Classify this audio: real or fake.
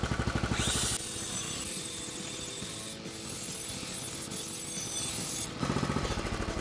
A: real